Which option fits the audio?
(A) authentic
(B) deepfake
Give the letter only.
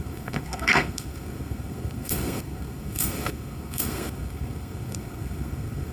B